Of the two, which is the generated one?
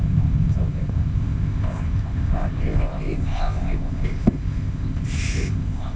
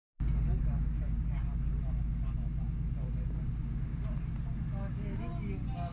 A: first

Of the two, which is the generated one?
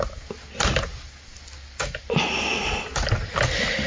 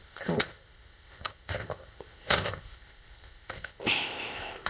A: second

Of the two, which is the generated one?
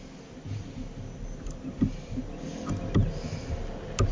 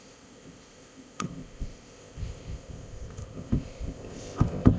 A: second